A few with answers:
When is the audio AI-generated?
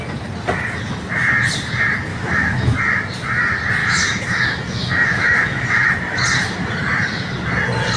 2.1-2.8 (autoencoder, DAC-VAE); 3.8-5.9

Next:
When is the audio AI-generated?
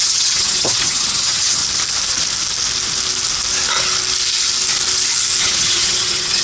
0.0-1.6 (vocoder, HiFi-GAN); 5.4-6.4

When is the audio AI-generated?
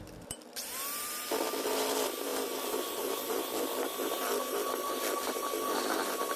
none